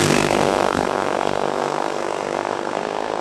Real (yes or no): no